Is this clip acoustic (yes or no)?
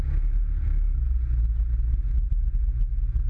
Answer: yes